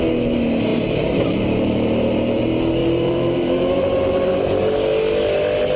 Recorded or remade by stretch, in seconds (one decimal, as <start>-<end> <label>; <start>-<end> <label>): 0.0-0.7 recorded; 0.7-2.4 remade; 2.4-2.8 recorded; 2.8-4.6 remade; 4.6-5.8 recorded